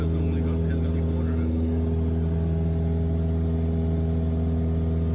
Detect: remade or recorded recorded